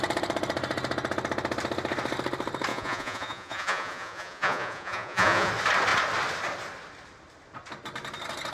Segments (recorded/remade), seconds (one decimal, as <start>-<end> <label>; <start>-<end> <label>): 0.0-2.7 recorded; 2.7-5.5 remade; 5.5-8.5 recorded